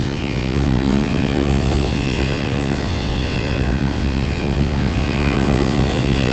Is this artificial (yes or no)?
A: yes